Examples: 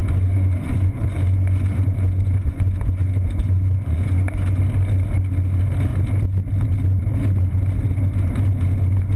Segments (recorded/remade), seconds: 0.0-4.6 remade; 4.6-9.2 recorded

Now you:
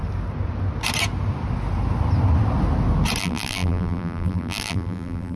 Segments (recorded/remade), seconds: 0.0-3.2 recorded; 3.2-5.4 remade

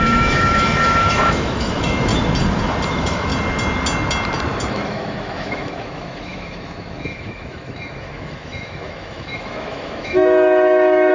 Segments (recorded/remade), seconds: 0.0-2.1 remade; 2.1-2.9 recorded; 2.9-3.3 remade; 3.3-4.7 recorded; 4.7-11.1 remade

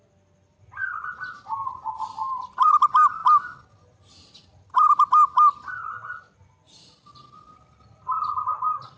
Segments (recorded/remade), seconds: 0.0-9.0 recorded